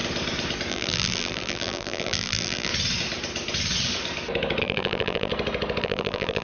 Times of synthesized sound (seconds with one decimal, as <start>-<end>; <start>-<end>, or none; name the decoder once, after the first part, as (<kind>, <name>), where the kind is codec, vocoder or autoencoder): 0.7-2.7 (vocoder, BigVGAN v2); 4.6-5.3; 5.8-6.4